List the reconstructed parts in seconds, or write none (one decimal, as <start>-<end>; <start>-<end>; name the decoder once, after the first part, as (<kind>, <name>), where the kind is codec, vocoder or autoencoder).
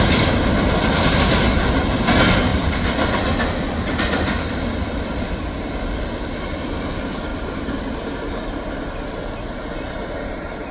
2.5-5.2 (vocoder, BigVGAN v2); 7.3-8.1